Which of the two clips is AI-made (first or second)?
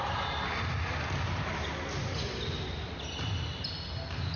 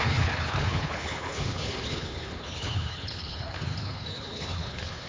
second